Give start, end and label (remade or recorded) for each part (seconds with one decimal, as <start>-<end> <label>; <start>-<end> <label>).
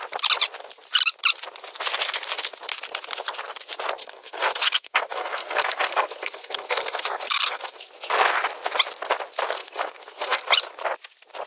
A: 0.0-4.0 recorded; 4.0-7.8 remade; 7.8-9.6 recorded; 9.6-10.5 remade; 10.5-11.5 recorded